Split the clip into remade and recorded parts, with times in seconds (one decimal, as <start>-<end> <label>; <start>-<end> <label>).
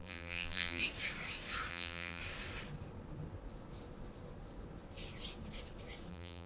0.0-0.8 remade; 0.8-1.7 recorded; 1.7-2.2 remade; 2.2-6.1 recorded; 6.1-6.5 remade